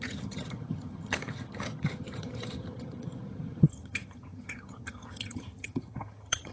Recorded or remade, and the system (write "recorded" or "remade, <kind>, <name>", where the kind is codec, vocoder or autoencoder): remade, vocoder, HiFi-GAN